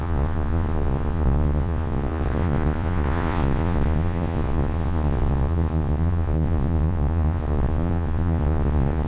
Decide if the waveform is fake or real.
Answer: fake